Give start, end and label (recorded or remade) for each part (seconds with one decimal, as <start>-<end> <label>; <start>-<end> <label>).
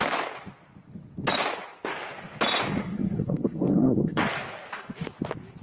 0.0-2.8 recorded; 2.8-4.2 remade; 4.2-5.6 recorded